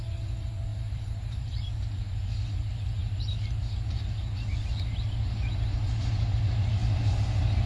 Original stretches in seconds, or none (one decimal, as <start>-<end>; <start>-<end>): 0.0-0.7; 2.4-3.0; 3.6-7.7